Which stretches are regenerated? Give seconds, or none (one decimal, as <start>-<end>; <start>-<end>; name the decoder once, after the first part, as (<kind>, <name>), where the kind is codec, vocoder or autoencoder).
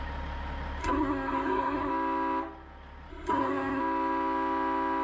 0.8-1.9 (codec, SNAC); 3.1-3.8